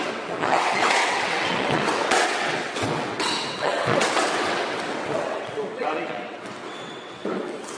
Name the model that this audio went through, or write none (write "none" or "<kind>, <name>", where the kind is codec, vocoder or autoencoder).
vocoder, WaveNeXt